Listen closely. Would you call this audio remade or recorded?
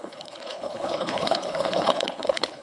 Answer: remade